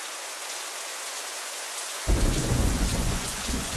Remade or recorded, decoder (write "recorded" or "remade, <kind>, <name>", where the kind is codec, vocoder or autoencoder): remade, vocoder, Vocos